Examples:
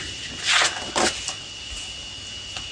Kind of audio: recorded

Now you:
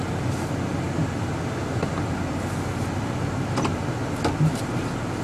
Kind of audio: recorded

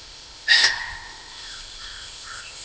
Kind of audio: remade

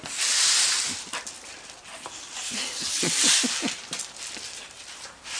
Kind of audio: recorded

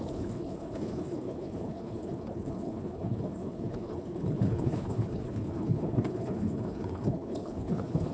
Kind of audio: remade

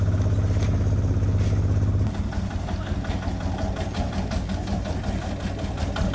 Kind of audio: recorded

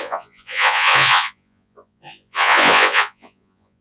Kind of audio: remade